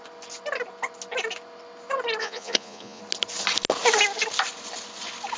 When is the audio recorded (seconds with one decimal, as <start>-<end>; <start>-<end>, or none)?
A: 0.0-2.2; 3.0-5.4